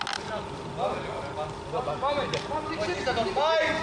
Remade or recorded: recorded